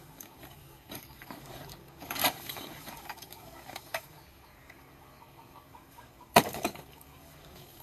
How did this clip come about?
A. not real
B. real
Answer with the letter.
A